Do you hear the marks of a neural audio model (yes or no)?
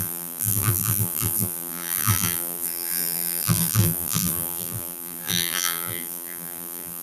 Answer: yes